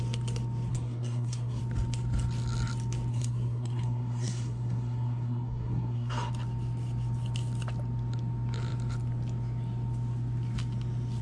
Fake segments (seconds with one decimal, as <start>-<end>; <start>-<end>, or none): 0.7-1.6; 3.1-6.3